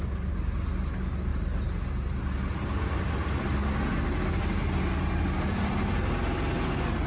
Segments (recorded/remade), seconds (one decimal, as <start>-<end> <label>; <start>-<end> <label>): 0.0-7.1 recorded